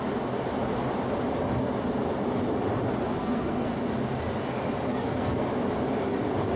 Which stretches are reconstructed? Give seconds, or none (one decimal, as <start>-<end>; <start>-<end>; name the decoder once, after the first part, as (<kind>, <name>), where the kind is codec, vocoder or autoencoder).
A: 3.1-3.7 (codec, SNAC); 4.9-5.5